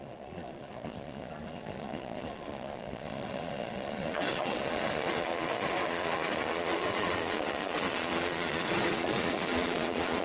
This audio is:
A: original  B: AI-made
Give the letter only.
B